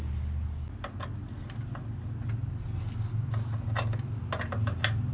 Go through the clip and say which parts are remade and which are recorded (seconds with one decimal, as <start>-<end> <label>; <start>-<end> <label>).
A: 0.0-5.1 recorded

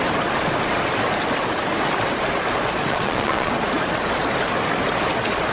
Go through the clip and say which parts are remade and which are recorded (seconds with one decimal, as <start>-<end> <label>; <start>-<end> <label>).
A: 0.0-2.9 recorded; 2.9-3.5 remade; 3.5-5.5 recorded

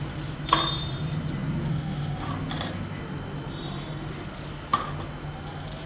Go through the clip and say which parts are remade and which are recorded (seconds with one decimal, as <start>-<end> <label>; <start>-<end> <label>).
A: 0.0-1.7 recorded; 1.7-2.3 remade; 2.3-5.9 recorded

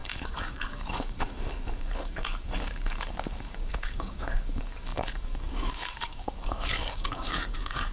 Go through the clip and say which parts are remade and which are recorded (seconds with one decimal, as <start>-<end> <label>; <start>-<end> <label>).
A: 0.0-7.9 remade